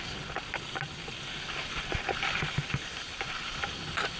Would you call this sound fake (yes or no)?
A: yes